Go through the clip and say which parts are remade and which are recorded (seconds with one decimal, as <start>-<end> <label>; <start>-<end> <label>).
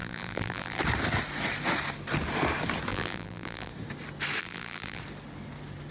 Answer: 0.0-0.8 remade; 0.8-2.9 recorded; 2.9-3.7 remade; 3.7-4.4 recorded; 4.4-5.0 remade; 5.0-5.9 recorded